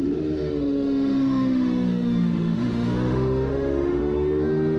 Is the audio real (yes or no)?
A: no